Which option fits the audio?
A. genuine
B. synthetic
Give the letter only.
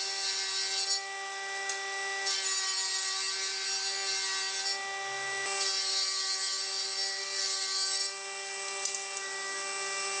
A